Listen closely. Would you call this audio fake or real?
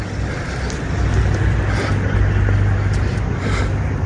real